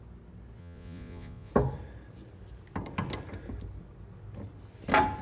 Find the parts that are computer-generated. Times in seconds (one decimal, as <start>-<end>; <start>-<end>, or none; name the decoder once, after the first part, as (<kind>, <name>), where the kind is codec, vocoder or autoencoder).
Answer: 0.6-1.5 (vocoder, Vocos)